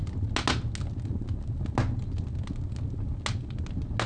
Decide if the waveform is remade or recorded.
recorded